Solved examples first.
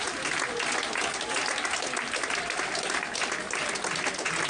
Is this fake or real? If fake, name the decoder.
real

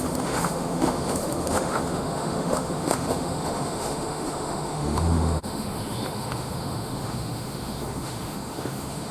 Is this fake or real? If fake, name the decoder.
fake, autoencoder, DAC-VAE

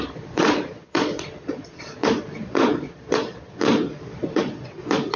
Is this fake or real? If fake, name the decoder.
fake, vocoder, Vocos